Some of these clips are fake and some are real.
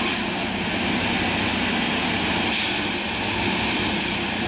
real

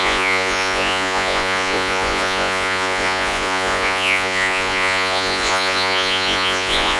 fake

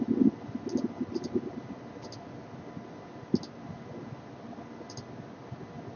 real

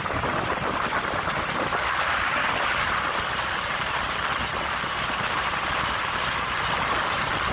real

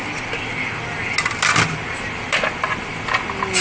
real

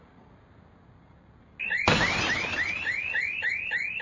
real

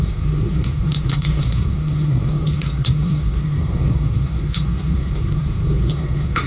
fake